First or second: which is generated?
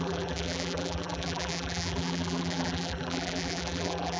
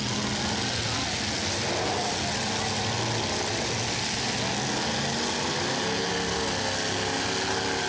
first